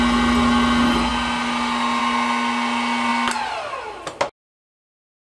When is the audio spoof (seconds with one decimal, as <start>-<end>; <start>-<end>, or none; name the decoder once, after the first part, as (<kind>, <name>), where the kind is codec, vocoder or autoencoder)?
none